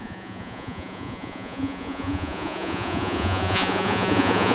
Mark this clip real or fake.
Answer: fake